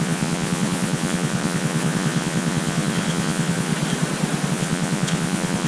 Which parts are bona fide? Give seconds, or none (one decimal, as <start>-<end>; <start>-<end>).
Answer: 3.7-4.5